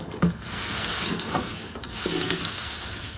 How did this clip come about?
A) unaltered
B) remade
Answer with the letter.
B